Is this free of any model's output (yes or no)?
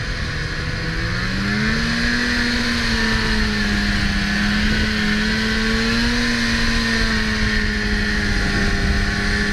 yes